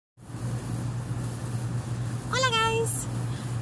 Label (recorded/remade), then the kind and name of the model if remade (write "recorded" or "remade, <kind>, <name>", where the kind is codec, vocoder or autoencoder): recorded